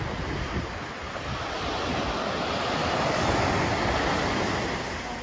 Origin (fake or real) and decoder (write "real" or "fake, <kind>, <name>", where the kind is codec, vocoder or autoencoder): real